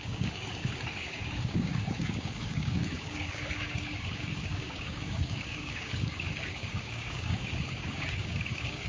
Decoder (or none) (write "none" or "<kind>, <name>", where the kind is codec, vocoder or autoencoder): codec, DAC